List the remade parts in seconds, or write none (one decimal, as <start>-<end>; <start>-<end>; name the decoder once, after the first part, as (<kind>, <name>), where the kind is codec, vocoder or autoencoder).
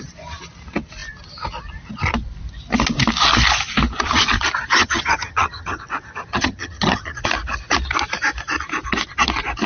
4.8-5.8 (vocoder, HiFi-GAN); 6.3-7.2